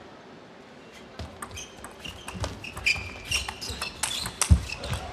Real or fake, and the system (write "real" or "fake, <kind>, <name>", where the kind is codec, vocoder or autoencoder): real